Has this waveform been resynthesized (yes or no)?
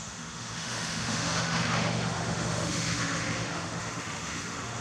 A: yes